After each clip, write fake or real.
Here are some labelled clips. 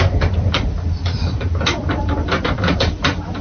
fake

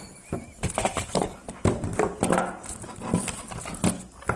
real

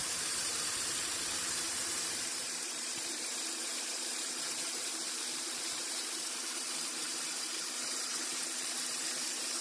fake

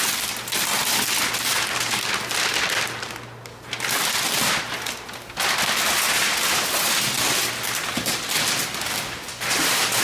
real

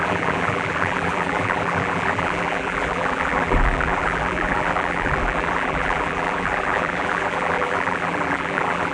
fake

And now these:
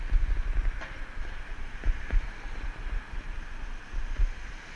real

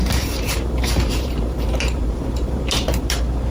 fake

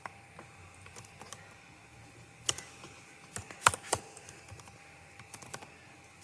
real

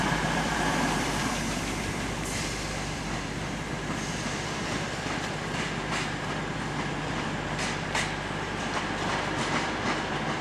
fake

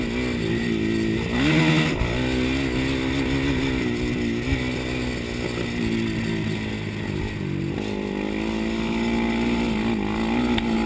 real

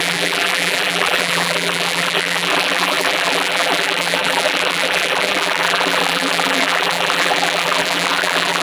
fake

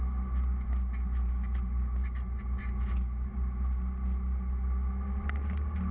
real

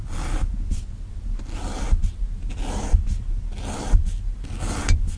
real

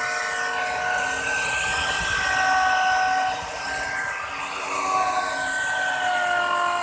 real